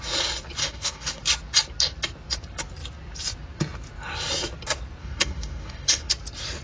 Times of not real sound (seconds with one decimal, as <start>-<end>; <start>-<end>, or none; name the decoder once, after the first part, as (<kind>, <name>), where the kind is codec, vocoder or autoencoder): 0.6-1.2 (codec, DAC); 5.0-6.1